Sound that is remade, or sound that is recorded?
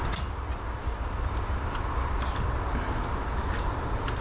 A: recorded